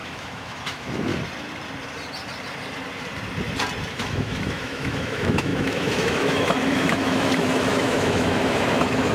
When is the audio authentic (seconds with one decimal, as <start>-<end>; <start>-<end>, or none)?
1.1-3.9